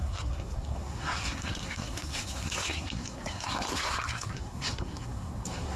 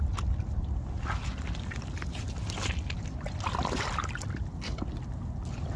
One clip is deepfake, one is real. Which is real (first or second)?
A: second